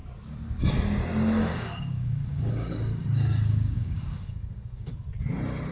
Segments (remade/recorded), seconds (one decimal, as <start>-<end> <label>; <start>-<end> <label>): 0.0-1.5 recorded; 1.5-4.9 remade; 4.9-5.7 recorded